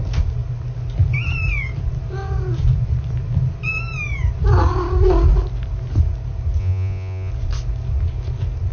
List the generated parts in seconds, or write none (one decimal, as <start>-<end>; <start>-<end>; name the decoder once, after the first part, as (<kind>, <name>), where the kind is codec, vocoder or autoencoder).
6.6-7.3 (vocoder, Vocos)